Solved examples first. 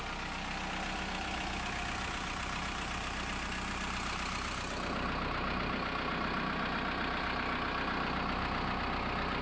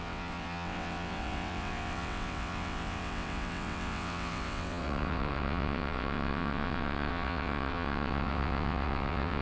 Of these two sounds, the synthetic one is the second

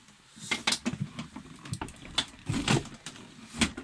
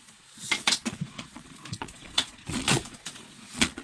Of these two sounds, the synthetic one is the second